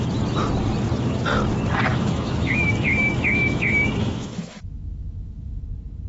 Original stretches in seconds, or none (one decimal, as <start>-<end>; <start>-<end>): 0.0-1.9; 5.6-6.1